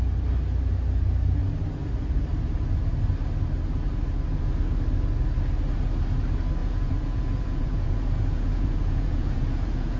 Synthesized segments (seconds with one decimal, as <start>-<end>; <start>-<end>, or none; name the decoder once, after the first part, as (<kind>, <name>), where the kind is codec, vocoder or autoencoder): 6.6-10.0 (vocoder, Vocos)